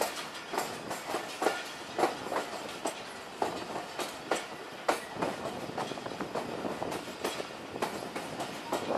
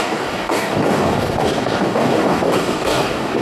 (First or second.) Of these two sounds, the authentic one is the first